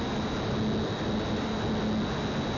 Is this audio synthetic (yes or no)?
no